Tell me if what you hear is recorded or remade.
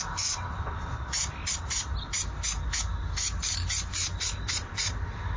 recorded